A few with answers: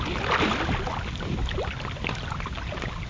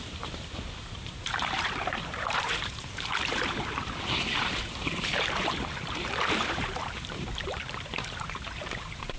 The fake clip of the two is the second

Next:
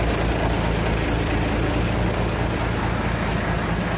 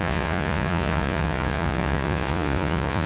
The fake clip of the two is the second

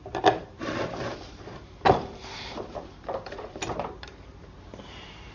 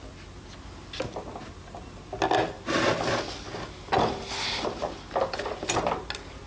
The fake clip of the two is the first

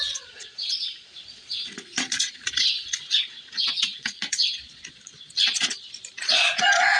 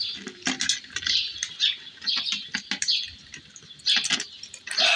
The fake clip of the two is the first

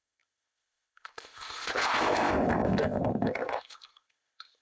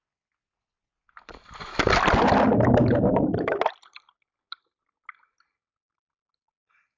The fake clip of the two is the first